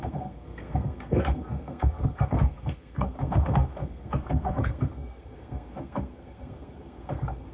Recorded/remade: remade